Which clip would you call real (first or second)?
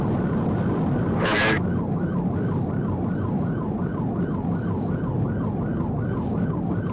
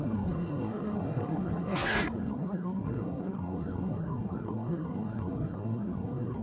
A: first